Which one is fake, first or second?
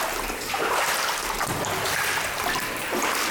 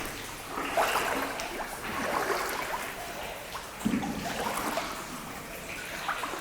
first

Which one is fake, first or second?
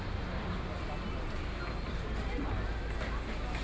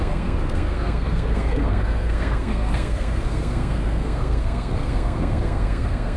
second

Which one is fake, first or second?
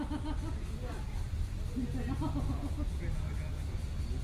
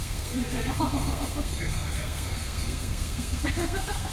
second